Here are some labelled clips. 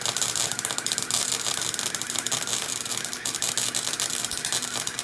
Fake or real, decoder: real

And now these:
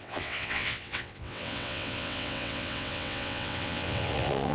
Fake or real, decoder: fake, vocoder, WaveNeXt